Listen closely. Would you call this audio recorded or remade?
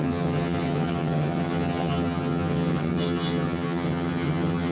remade